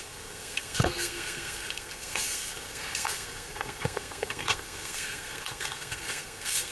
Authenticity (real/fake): fake